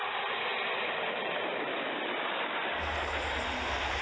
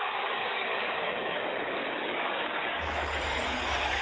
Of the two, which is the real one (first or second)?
first